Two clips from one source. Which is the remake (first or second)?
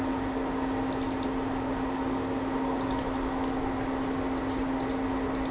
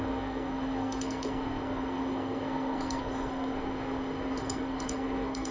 second